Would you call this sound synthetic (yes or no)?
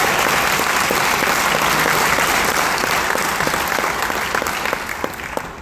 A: no